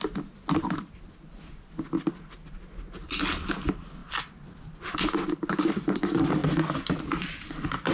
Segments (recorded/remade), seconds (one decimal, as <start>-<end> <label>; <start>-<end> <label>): 0.0-7.9 recorded